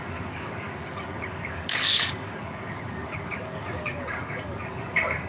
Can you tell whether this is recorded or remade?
remade